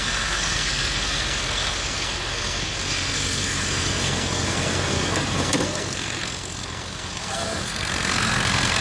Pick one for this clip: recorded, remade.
remade